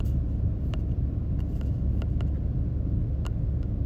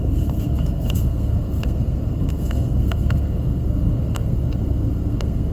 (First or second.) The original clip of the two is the first